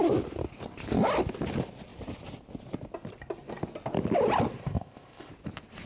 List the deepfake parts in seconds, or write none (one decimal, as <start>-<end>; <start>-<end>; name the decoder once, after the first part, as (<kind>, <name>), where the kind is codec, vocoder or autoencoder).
4.6-5.3 (codec, ZipCodec)